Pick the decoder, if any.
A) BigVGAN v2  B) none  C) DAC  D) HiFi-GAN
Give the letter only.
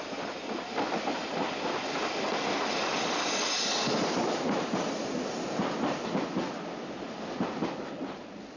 B